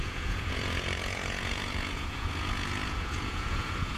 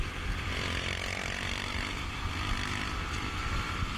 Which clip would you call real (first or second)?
second